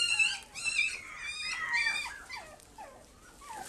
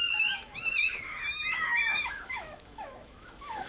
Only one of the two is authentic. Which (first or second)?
first